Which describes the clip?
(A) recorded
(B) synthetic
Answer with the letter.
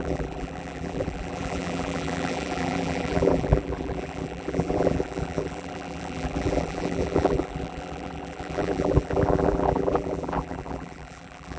B